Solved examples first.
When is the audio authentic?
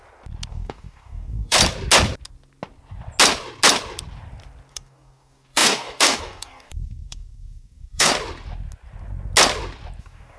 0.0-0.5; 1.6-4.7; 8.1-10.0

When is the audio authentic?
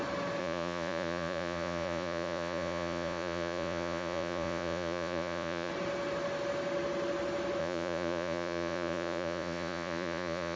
0.0-0.4; 5.7-7.6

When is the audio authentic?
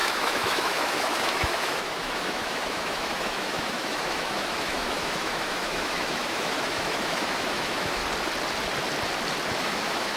8.0-9.5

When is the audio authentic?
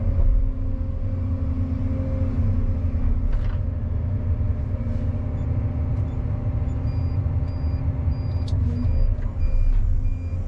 0.0-5.9; 6.7-10.5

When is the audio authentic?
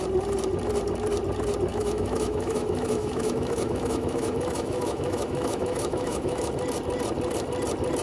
0.0-1.7; 6.5-8.0